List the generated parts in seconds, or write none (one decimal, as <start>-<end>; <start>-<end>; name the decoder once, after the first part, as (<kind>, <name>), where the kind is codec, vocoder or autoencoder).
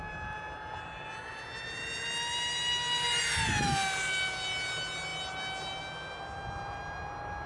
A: none